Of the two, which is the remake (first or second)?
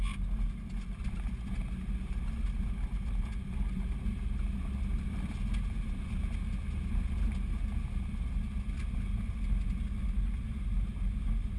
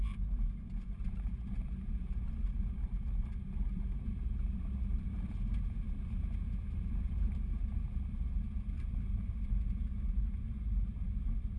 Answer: second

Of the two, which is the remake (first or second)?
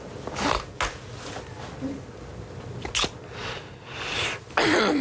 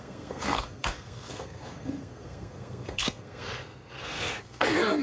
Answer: second